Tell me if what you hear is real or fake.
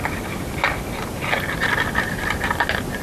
real